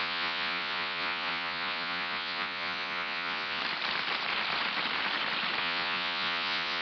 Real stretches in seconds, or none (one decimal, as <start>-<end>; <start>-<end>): 3.6-5.6